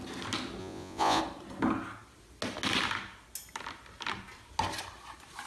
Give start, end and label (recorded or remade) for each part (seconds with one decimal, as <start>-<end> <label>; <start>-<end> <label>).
0.0-0.6 recorded; 0.6-1.2 remade; 1.2-5.5 recorded